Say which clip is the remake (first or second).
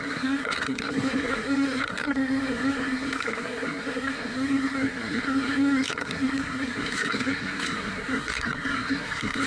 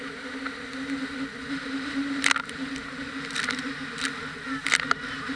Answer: first